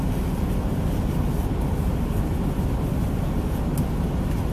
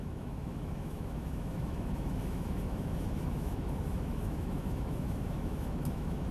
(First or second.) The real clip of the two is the first